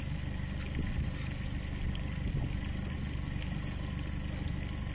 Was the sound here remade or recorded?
recorded